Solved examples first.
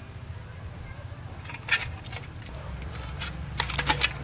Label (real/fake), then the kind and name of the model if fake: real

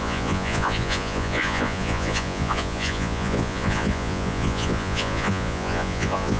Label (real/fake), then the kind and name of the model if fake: fake, vocoder, Vocos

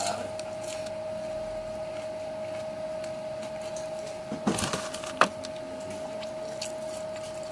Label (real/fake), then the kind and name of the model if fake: real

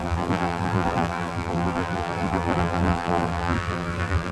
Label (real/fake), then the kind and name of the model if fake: fake, vocoder, BigVGAN v2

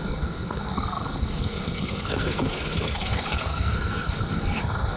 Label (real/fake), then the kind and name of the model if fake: fake, codec, SNAC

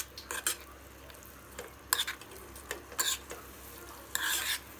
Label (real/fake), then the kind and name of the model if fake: real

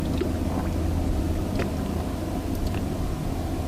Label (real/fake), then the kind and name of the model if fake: real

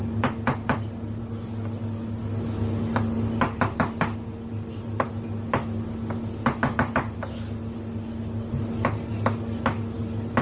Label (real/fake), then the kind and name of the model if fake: real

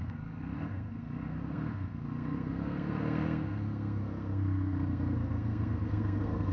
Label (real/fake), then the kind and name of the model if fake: fake, codec, SNAC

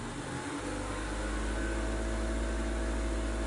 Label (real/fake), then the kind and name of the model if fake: real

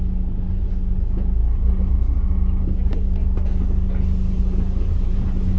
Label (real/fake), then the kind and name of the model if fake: real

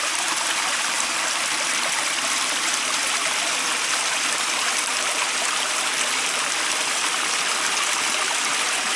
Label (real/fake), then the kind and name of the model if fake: fake, vocoder, BigVGAN v2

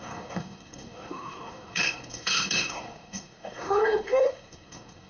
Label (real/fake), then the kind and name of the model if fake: fake, codec, SNAC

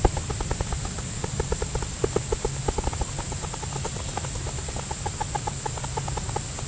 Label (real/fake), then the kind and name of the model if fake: real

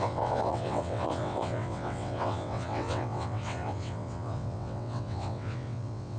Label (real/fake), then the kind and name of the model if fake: fake, vocoder, WaveNeXt